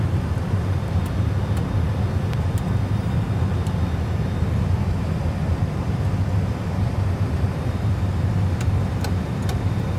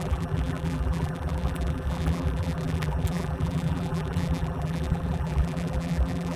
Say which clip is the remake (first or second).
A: second